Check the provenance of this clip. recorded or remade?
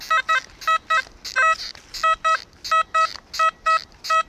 recorded